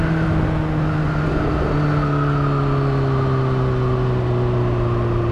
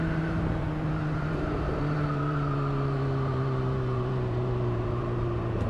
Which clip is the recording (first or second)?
first